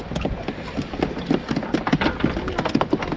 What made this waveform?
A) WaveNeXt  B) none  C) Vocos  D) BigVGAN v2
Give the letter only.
B